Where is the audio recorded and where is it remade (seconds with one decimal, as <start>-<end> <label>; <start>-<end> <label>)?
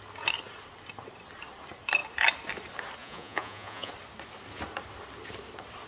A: 0.0-3.0 recorded; 3.0-3.9 remade; 3.9-5.9 recorded